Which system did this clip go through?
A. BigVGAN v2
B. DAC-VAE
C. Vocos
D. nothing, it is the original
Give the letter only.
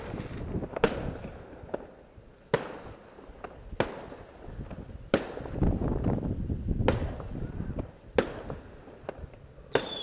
D